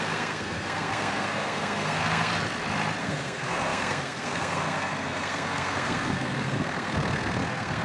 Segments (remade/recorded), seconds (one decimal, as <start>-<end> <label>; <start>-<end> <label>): 0.0-2.3 remade; 2.3-3.0 recorded; 3.0-7.8 remade